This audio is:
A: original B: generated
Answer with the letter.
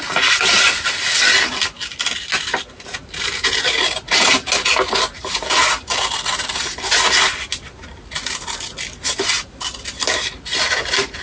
A